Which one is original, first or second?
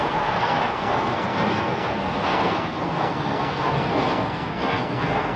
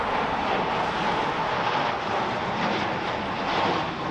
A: second